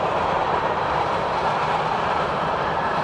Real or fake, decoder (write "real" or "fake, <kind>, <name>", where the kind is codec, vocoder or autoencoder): fake, vocoder, BigVGAN v2